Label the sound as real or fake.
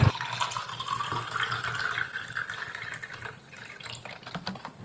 real